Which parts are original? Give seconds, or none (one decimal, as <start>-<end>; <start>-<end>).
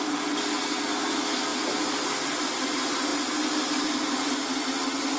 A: 0.0-5.2